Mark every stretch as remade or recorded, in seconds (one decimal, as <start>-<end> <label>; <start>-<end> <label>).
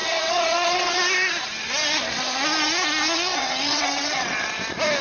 0.0-1.0 remade; 1.0-3.3 recorded; 3.3-4.4 remade; 4.4-5.0 recorded